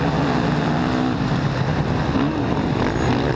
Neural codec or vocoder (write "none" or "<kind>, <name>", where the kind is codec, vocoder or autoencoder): none